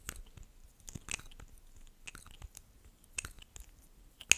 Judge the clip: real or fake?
real